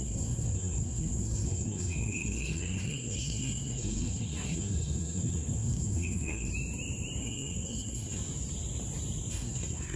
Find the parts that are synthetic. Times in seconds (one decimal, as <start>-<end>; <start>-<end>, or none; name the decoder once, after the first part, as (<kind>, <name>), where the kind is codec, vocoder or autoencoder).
0.0-6.5 (codec, SNAC); 7.2-8.2; 9.3-10.0